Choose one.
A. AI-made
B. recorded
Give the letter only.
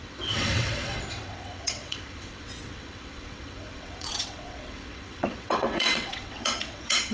A